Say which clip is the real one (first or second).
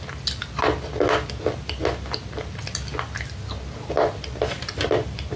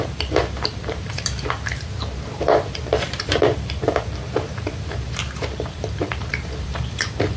first